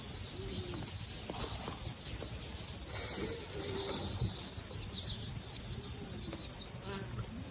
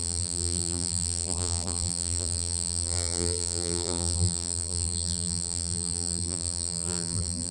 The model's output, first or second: second